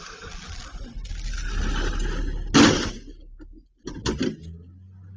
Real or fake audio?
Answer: real